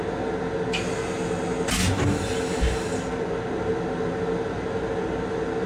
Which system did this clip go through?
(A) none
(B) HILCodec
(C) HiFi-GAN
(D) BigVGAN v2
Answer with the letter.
A